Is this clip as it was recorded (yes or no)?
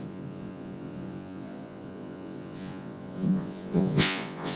no